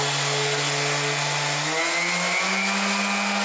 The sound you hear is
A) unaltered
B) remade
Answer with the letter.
A